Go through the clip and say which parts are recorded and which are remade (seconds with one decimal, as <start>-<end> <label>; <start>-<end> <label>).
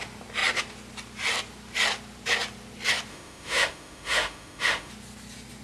0.0-3.1 recorded; 3.1-4.9 remade; 4.9-5.6 recorded